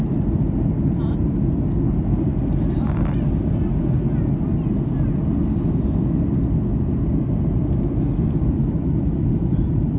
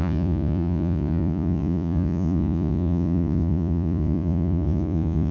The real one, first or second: first